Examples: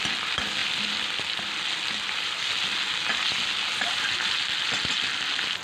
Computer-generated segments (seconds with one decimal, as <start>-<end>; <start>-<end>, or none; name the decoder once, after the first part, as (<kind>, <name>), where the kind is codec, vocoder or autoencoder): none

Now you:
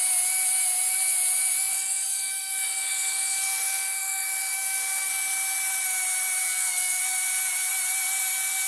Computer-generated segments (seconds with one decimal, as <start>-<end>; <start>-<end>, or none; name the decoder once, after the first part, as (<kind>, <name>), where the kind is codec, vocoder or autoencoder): 1.7-5.1 (codec, SNAC); 6.4-7.0

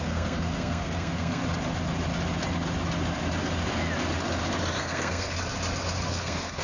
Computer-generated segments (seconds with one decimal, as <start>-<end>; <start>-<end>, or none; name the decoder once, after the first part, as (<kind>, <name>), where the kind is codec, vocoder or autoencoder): 0.0-1.4 (codec, SNAC); 4.8-5.3; 6.1-6.6

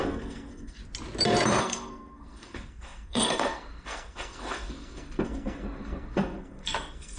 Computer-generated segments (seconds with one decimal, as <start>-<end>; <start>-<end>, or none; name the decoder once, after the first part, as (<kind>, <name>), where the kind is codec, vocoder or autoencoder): 0.0-0.8 (codec, SNAC); 1.6-7.2